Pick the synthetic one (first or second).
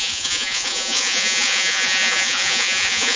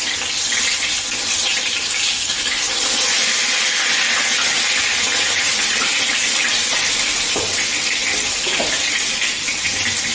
first